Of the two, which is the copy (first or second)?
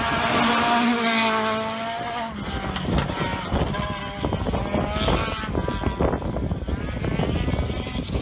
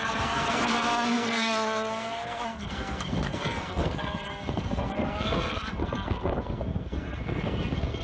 second